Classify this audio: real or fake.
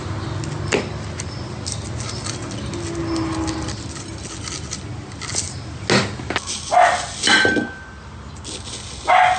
real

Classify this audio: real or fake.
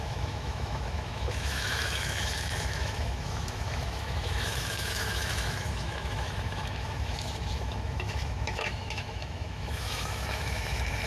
fake